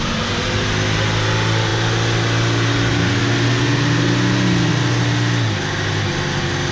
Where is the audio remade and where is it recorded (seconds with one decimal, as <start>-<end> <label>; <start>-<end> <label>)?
0.0-6.7 recorded